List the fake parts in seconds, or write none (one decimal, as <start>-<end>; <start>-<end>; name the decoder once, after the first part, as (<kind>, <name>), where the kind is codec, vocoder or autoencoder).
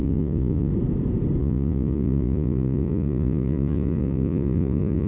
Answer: 0.0-0.7 (vocoder, Vocos); 1.4-5.1